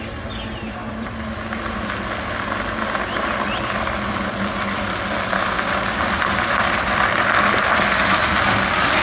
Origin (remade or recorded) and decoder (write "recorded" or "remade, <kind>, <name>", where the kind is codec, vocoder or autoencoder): recorded